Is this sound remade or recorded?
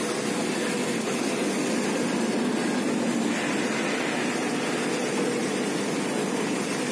recorded